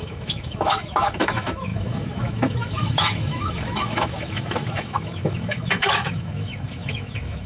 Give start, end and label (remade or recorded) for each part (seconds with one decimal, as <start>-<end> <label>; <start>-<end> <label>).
0.0-7.5 remade